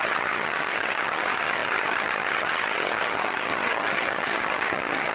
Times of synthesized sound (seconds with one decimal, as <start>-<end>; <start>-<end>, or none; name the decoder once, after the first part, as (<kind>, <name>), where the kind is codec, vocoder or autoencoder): 0.0-5.1 (vocoder, HiFi-GAN)